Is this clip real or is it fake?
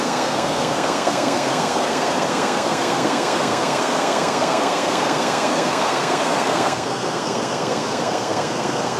fake